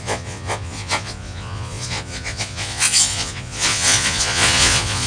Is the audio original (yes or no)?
no